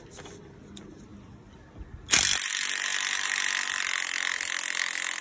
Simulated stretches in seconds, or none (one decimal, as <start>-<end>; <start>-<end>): 0.0-1.1; 2.5-5.2